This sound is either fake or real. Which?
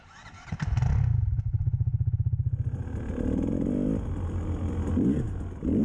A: real